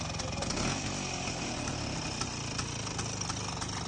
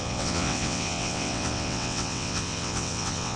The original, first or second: first